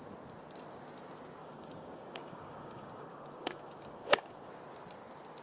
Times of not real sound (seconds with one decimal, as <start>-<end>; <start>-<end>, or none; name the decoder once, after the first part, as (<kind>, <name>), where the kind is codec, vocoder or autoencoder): 1.4-4.5 (codec, DAC)